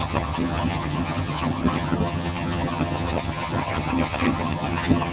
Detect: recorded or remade remade